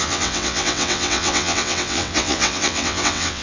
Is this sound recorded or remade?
remade